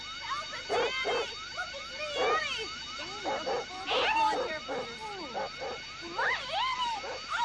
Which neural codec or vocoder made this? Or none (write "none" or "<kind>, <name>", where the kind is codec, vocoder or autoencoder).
none